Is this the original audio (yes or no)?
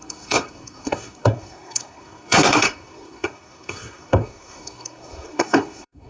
no